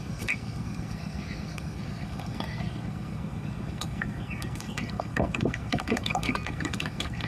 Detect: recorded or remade remade